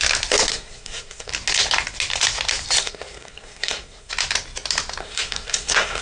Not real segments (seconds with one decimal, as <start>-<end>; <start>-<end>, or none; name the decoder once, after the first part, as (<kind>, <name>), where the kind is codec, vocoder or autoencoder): 0.5-1.3 (codec, SNAC); 2.8-4.1; 5.0-6.0